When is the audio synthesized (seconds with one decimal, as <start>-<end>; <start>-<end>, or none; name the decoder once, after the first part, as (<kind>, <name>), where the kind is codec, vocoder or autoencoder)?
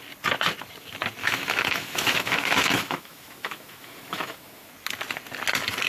1.2-4.7 (autoencoder, DAC-VAE)